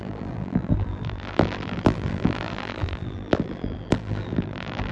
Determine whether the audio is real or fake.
fake